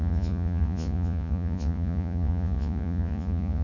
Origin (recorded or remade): remade